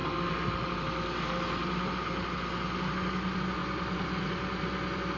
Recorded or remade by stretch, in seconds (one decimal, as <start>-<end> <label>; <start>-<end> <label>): 0.0-5.2 recorded